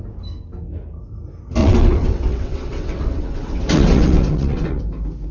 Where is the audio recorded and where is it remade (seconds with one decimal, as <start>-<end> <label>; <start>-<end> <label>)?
0.0-1.6 recorded; 1.6-4.8 remade; 4.8-5.3 recorded